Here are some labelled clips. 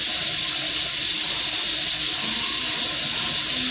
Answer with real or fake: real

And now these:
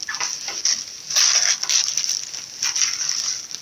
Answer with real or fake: real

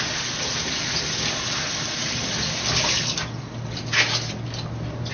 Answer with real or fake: real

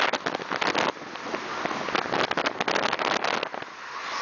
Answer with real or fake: real